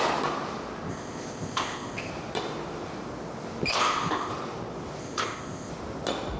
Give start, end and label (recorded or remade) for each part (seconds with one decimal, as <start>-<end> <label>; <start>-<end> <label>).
0.0-0.9 recorded; 0.9-2.1 remade; 2.1-3.7 recorded; 3.7-4.3 remade; 4.3-5.0 recorded; 5.0-5.7 remade; 5.7-6.4 recorded